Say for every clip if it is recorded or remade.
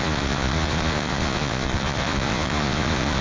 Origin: remade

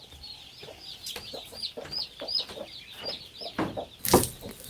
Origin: recorded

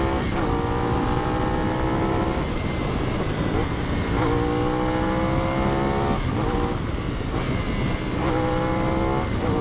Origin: recorded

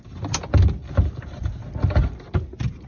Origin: recorded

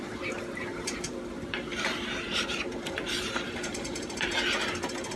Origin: remade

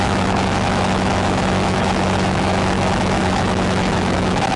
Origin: remade